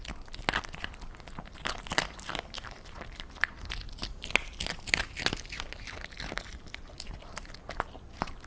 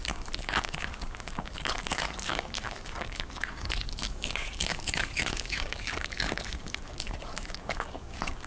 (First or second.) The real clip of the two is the first